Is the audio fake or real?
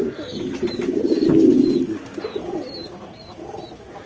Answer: real